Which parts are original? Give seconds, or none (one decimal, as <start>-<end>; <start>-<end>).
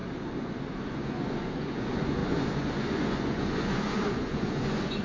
0.0-0.8